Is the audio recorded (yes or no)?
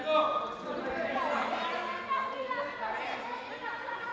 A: yes